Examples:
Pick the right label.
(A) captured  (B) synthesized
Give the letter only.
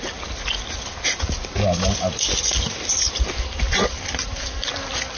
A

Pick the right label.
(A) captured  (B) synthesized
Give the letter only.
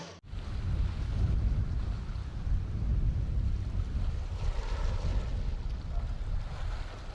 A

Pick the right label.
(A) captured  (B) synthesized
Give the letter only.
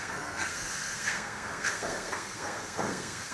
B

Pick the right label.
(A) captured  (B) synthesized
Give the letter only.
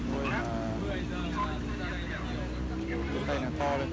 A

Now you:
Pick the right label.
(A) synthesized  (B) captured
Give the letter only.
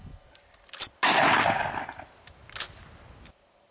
B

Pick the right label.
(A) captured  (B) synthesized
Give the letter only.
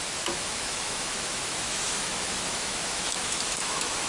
B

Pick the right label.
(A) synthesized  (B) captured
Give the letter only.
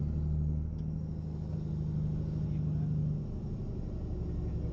B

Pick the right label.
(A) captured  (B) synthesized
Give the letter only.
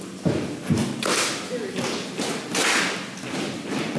A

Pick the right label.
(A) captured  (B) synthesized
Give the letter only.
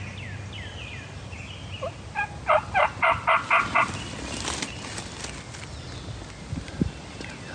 A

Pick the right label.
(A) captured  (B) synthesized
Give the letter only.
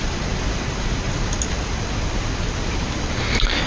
A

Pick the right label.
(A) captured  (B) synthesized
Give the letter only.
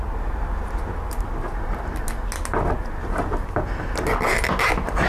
A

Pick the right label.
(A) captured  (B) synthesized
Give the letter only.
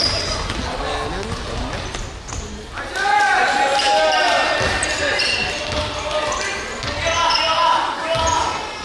A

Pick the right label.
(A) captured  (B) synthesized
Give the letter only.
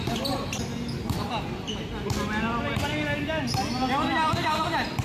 A